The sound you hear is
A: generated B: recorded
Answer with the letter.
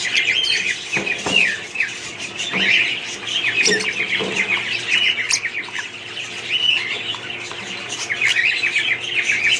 B